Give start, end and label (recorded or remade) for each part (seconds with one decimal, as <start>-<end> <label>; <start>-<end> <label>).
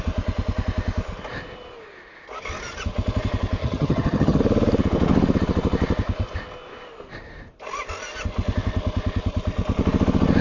0.0-3.6 recorded; 3.6-4.4 remade; 4.4-10.4 recorded